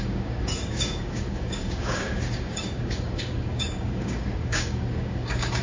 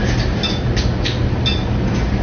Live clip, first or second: second